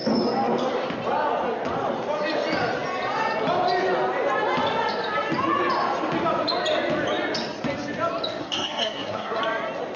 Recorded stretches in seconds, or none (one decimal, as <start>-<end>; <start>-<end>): 0.0-8.4; 9.4-10.0

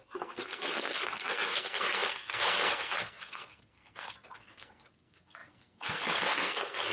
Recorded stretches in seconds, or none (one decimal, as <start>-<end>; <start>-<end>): none

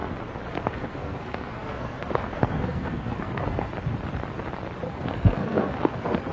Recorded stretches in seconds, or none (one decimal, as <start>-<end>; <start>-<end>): 0.0-0.5; 3.7-4.9

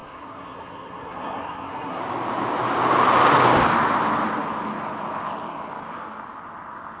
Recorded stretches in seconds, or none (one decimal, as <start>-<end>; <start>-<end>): 2.0-7.0

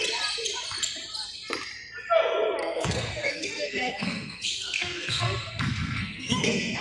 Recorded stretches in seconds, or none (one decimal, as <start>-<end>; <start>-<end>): 0.0-2.6

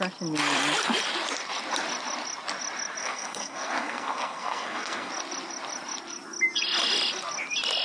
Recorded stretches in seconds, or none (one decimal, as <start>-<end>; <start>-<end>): 0.0-3.0; 5.1-7.8

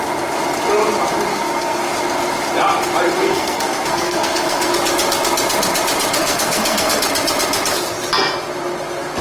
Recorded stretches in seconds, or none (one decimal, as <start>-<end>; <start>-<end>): 0.0-1.3; 1.8-3.2; 4.7-6.2; 7.0-9.2

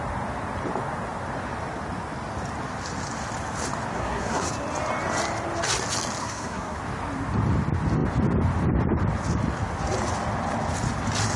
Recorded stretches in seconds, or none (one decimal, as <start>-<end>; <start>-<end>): 0.0-3.9; 4.5-6.2; 6.8-11.4